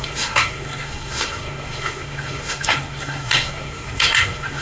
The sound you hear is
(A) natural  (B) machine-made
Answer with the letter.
B